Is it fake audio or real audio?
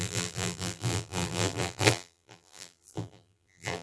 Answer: fake